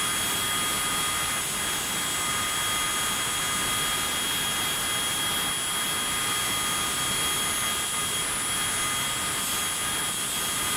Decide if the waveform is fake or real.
real